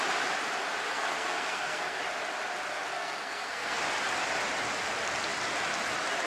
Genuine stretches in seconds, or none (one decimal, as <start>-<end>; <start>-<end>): 0.0-0.9; 2.0-2.9; 3.8-6.3